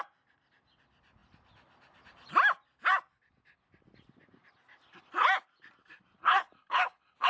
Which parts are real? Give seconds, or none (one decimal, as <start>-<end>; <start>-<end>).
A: 0.0-6.2